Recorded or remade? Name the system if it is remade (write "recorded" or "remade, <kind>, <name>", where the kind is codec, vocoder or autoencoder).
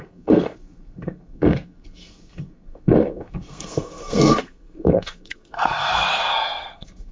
remade, codec, SNAC